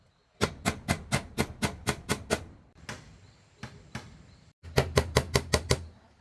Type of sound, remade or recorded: recorded